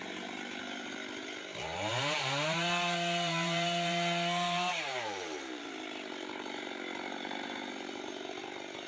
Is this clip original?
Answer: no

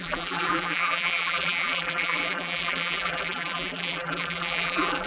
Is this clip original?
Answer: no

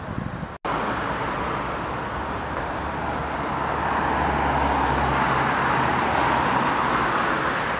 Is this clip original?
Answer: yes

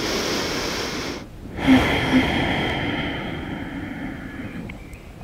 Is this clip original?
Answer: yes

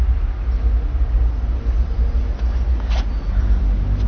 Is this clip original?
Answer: yes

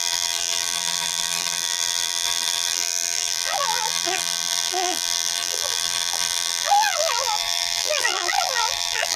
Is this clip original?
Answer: no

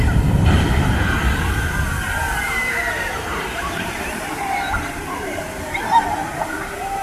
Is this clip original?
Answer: no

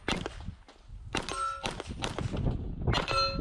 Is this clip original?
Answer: yes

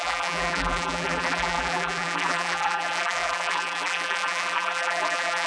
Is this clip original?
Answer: no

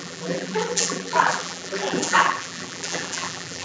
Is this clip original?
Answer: no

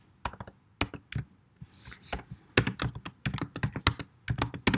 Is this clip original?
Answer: yes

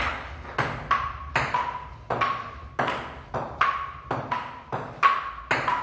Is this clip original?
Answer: yes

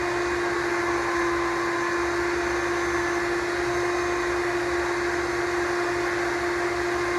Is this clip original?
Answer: yes